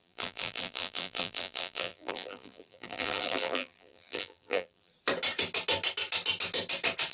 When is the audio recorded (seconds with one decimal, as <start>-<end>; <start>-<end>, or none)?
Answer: 4.9-7.1